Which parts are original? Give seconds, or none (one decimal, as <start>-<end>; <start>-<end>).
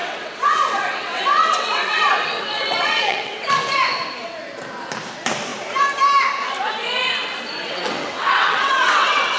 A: 3.5-7.6